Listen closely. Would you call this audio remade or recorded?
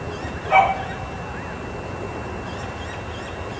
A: recorded